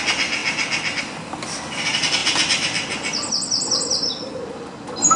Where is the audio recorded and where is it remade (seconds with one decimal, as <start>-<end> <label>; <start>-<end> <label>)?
0.0-5.2 recorded